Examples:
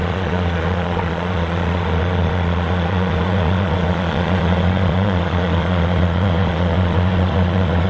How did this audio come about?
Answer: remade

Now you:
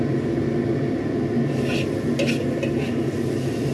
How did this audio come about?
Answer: recorded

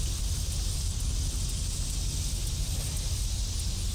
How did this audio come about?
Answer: recorded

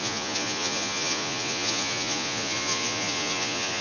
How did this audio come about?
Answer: remade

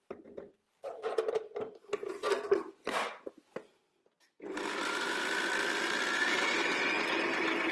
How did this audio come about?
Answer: recorded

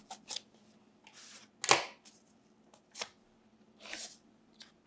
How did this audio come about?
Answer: recorded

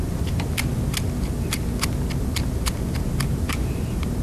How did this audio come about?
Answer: recorded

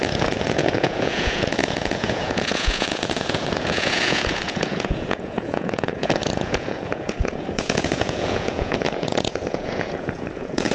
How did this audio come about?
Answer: remade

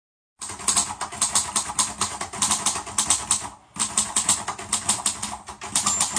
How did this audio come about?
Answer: recorded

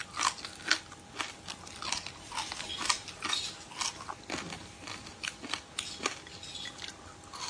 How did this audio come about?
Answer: recorded